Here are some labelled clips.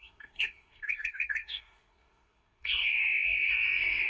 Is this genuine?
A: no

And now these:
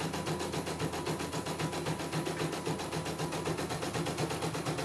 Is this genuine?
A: yes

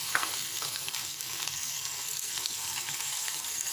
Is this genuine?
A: no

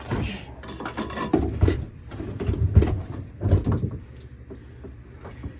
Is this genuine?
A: no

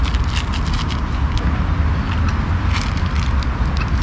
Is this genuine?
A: yes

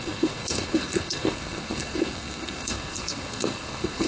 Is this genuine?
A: no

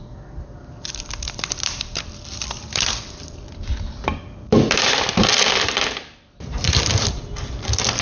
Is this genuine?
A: no